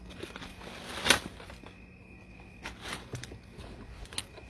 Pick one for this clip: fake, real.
real